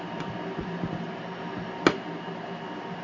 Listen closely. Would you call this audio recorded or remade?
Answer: recorded